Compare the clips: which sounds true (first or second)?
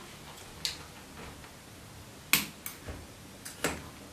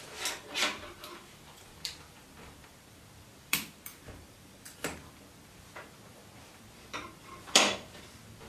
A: first